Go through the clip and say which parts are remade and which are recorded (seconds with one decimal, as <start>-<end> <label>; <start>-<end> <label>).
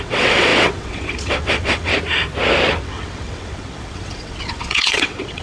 0.0-1.9 remade; 1.9-2.8 recorded; 2.8-5.4 remade